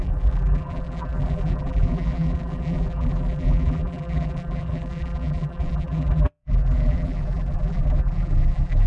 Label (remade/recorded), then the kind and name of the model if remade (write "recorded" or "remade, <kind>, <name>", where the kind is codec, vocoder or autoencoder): remade, vocoder, BigVGAN v2